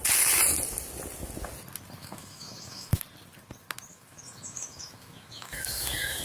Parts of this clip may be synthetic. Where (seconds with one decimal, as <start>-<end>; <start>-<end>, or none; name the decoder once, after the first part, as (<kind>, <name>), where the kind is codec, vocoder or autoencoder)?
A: 2.0-3.0 (autoencoder, DAC-VAE); 3.9-6.2